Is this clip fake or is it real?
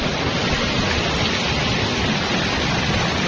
real